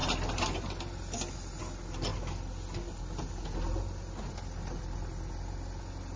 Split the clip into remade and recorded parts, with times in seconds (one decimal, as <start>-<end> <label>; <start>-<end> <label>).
0.0-6.2 recorded